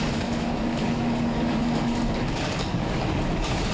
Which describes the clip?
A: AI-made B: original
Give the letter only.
A